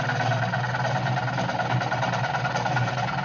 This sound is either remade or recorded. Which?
recorded